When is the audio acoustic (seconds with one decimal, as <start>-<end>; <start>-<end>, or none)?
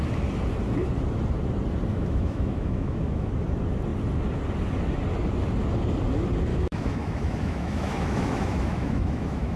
0.0-1.9; 3.3-6.5